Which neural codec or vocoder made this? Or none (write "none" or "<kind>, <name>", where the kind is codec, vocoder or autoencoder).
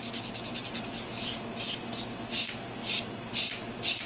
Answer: none